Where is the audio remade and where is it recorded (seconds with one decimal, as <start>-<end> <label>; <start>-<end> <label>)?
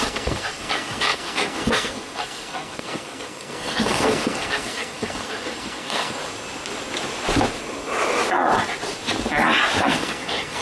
0.0-6.2 remade; 6.2-9.8 recorded; 9.8-10.6 remade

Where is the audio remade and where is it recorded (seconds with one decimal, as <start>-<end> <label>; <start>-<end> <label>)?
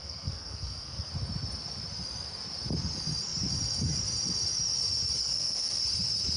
0.0-1.1 remade; 1.1-5.2 recorded; 5.2-5.8 remade; 5.8-6.4 recorded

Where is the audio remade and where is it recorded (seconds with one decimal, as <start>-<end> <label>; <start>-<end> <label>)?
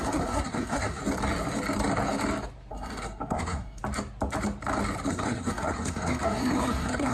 0.0-1.0 remade; 1.0-2.7 recorded; 2.7-3.8 remade; 3.8-5.1 recorded; 5.1-7.1 remade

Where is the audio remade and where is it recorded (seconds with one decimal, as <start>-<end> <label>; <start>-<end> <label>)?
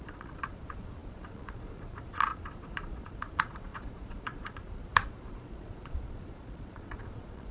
0.0-7.5 remade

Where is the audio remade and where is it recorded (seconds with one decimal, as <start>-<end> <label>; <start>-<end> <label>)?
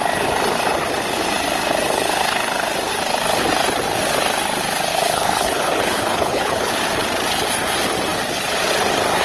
0.0-4.9 recorded; 4.9-6.7 remade; 6.7-9.2 recorded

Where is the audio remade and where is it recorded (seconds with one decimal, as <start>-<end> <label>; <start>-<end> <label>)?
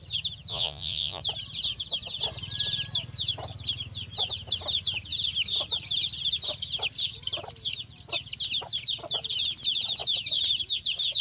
0.0-0.5 recorded; 0.5-1.2 remade; 1.2-11.2 recorded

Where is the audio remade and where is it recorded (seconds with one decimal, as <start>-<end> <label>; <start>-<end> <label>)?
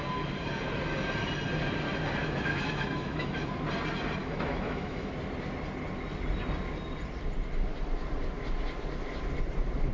0.0-2.2 recorded; 2.2-3.5 remade; 3.5-4.2 recorded; 4.2-5.1 remade; 5.1-9.9 recorded